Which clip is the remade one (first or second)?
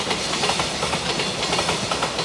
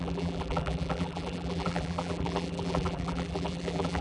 second